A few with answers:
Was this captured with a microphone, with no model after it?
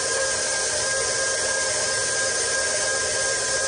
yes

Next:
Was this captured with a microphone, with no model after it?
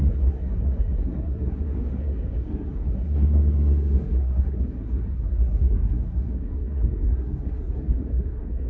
no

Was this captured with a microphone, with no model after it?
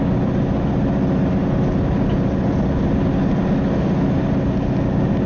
yes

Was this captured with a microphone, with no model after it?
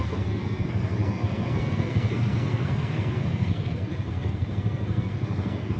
no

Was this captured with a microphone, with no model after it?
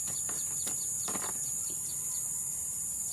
yes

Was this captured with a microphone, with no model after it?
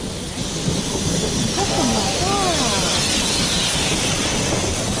yes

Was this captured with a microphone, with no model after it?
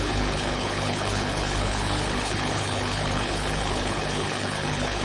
no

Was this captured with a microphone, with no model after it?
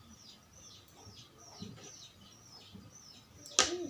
yes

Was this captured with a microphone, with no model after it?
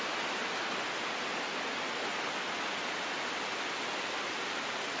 yes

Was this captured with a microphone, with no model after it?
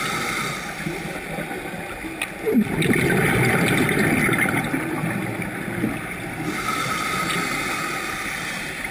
yes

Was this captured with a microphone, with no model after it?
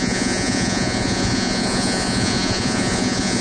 no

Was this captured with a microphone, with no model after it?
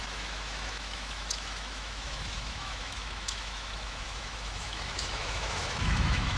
no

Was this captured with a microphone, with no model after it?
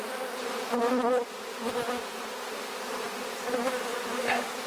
yes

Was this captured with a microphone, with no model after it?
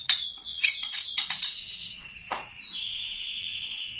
no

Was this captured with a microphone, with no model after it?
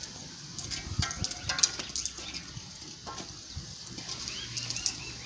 yes